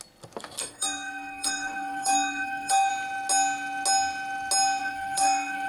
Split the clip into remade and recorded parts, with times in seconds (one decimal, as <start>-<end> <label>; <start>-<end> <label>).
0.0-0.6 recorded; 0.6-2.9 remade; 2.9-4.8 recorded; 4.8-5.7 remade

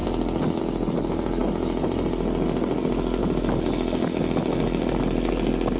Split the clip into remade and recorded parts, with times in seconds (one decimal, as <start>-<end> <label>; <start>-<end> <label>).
0.0-5.8 recorded

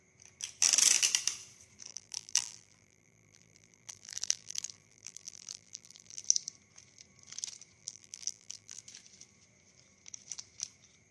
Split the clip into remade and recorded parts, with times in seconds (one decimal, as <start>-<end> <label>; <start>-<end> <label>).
0.0-1.9 recorded; 1.9-6.2 remade; 6.2-7.8 recorded; 7.8-8.8 remade; 8.8-11.1 recorded

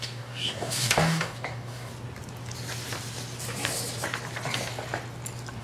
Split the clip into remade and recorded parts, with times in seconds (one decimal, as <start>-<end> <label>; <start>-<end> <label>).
0.0-1.9 remade; 1.9-5.6 recorded